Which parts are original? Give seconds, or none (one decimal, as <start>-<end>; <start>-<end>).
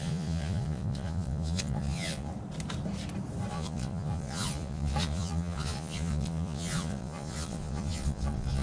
2.3-3.5